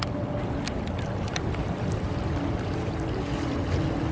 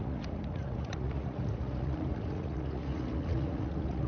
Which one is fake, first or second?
second